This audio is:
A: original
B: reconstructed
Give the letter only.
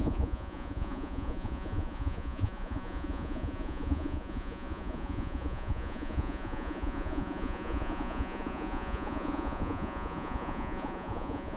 B